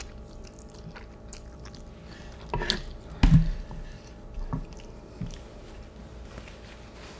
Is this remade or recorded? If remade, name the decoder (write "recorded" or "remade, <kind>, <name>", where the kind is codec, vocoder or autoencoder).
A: recorded